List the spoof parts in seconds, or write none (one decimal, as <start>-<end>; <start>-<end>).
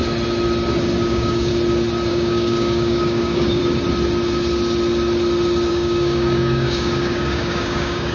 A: 1.1-1.5; 2.1-3.6; 5.7-8.1